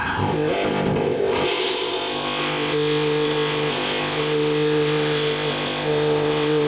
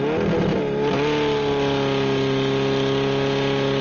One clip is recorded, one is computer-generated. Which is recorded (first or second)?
second